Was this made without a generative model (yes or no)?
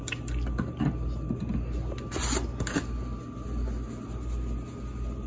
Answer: yes